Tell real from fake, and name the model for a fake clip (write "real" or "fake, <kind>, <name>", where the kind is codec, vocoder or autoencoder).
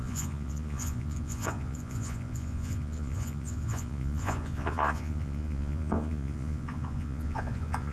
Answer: fake, vocoder, Vocos